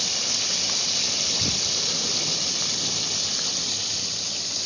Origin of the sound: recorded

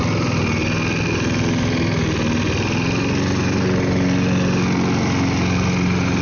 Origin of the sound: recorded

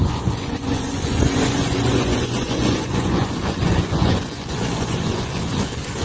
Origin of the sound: remade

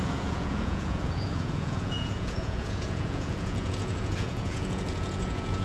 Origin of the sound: remade